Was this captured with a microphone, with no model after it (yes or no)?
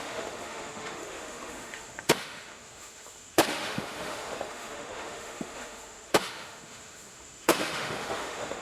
no